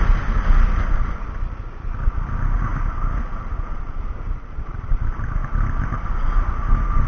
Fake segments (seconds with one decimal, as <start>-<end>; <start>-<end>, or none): 2.7-4.9; 5.4-6.1